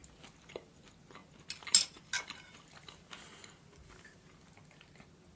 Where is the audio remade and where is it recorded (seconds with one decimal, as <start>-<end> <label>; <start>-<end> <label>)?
0.0-5.4 recorded